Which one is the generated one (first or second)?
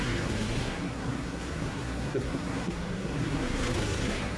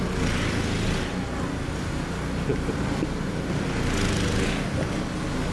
first